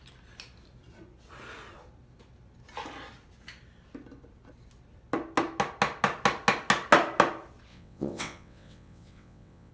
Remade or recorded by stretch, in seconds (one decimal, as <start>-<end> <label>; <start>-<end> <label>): 0.0-7.7 recorded; 7.7-9.7 remade